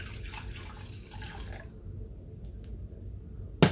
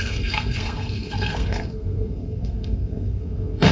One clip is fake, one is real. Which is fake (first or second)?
second